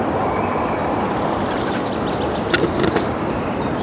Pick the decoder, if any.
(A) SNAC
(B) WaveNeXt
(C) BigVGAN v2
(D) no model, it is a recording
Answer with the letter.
D